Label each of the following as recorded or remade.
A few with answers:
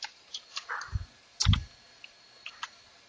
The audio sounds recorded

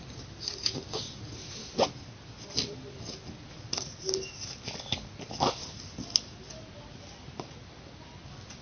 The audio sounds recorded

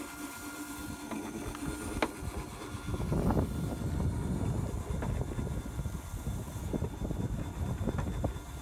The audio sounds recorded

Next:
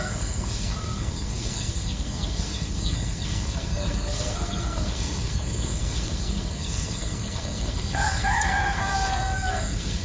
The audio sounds remade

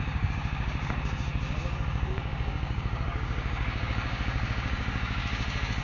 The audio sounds remade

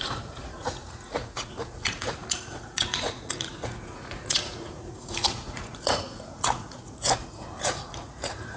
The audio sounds remade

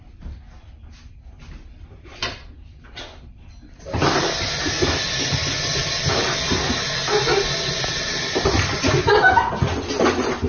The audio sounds recorded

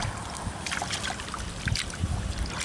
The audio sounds recorded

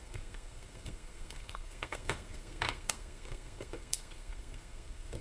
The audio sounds remade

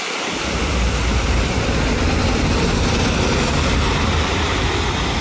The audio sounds remade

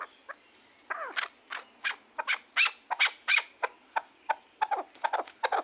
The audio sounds recorded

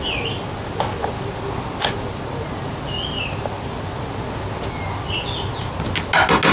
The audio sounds recorded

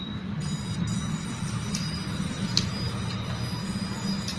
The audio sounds remade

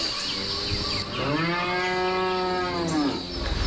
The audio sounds recorded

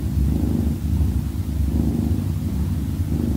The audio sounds recorded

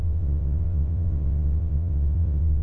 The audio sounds remade